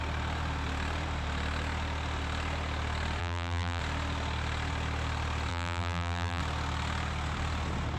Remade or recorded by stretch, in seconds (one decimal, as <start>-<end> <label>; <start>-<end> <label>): 0.0-3.2 recorded; 3.2-3.8 remade; 3.8-5.5 recorded; 5.5-6.4 remade; 6.4-8.0 recorded